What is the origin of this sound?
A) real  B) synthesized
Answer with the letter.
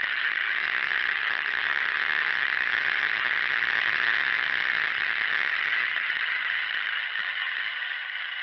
B